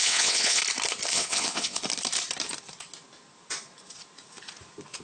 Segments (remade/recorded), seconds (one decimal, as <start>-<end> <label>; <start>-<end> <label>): 0.0-0.6 remade; 0.6-1.1 recorded; 1.1-1.8 remade; 1.8-5.0 recorded